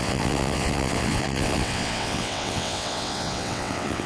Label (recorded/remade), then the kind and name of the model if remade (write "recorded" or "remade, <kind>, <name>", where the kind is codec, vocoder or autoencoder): remade, vocoder, WaveNeXt